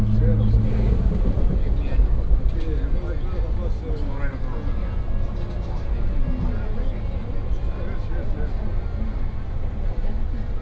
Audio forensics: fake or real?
real